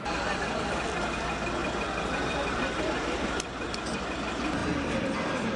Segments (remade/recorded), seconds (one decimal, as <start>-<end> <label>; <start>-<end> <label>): 0.0-5.6 recorded